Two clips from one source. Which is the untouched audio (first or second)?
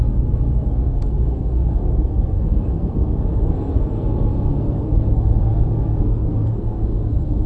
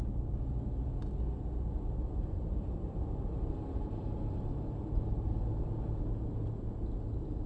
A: second